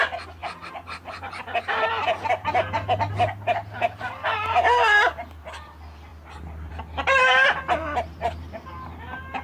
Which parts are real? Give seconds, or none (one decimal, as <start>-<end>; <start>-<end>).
6.1-6.7